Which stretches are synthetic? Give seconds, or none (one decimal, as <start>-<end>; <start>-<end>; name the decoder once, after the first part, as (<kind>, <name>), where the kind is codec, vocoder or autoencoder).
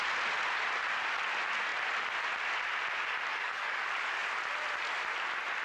3.3-3.8 (codec, DAC)